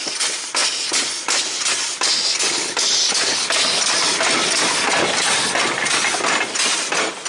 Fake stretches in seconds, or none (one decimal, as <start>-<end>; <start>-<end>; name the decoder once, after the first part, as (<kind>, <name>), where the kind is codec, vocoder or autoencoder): none